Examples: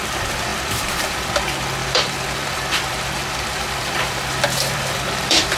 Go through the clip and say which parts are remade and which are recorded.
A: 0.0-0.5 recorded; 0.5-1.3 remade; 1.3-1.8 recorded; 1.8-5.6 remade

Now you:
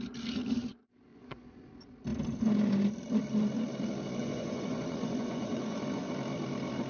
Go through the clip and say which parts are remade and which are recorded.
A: 0.0-1.1 recorded; 1.1-1.7 remade; 1.7-4.2 recorded; 4.2-6.1 remade; 6.1-6.9 recorded

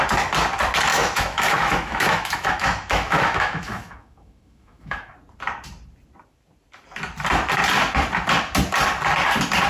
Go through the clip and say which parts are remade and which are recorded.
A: 0.0-0.9 recorded; 0.9-5.1 remade; 5.1-9.7 recorded

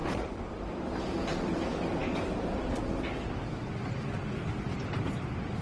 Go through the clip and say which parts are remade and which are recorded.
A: 0.0-0.7 remade; 0.7-5.6 recorded

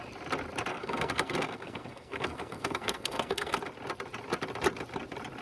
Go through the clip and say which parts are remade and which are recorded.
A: 0.0-0.7 recorded; 0.7-3.6 remade; 3.6-5.4 recorded